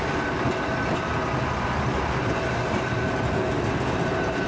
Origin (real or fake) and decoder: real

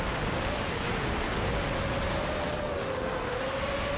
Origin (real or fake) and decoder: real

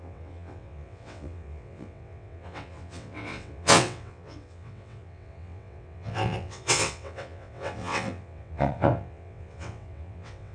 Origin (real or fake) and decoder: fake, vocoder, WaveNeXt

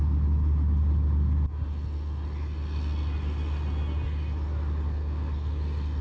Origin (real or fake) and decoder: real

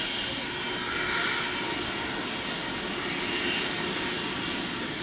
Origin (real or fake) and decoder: real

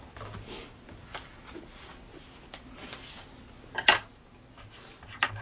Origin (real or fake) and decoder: real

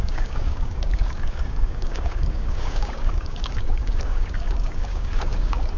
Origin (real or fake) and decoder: fake, codec, DAC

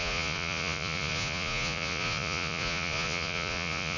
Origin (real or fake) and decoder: fake, vocoder, Vocos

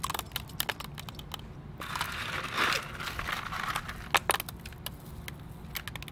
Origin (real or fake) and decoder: real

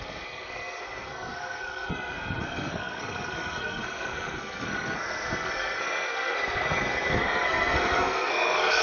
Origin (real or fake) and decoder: fake, codec, SNAC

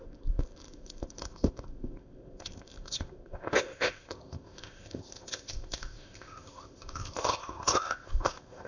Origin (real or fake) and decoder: fake, codec, ZipCodec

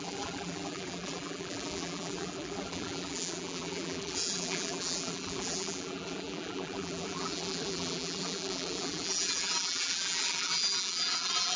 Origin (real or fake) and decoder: fake, vocoder, BigVGAN v2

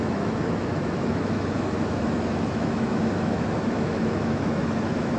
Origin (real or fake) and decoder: fake, autoencoder, DAC-VAE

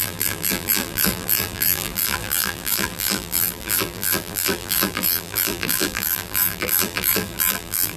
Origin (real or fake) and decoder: fake, vocoder, BigVGAN v2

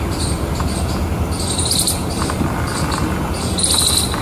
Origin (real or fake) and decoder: real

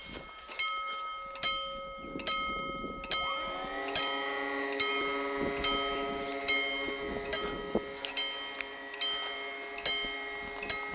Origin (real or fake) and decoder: real